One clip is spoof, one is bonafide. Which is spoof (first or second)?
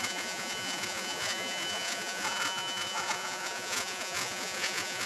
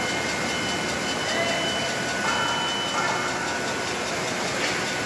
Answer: first